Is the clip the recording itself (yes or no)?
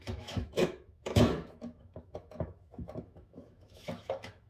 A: no